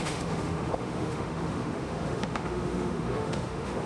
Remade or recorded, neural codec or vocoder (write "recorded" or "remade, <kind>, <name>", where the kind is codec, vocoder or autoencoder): remade, autoencoder, DAC-VAE